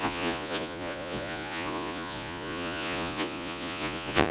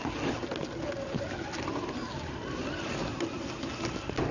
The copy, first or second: first